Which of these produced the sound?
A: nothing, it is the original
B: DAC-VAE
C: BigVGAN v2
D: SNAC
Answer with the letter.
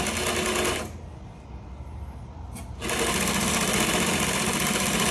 A